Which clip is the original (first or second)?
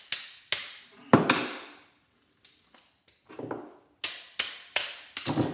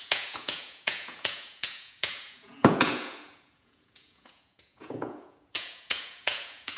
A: first